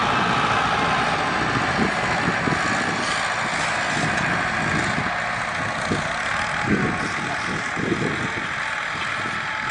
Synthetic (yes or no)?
no